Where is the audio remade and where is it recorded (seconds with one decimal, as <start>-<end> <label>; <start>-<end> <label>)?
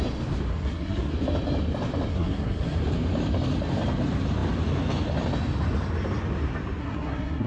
0.0-0.5 recorded; 0.5-1.1 remade; 1.1-2.1 recorded; 2.1-2.8 remade; 2.8-6.8 recorded; 6.8-7.5 remade